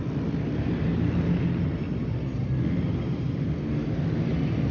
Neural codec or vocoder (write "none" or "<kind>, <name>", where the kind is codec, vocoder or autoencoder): none